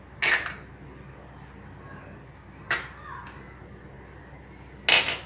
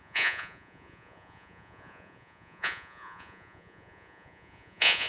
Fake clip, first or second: second